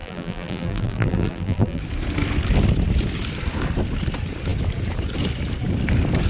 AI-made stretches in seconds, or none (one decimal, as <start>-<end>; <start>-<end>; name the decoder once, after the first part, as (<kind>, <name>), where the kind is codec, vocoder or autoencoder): 0.0-1.8 (vocoder, BigVGAN v2)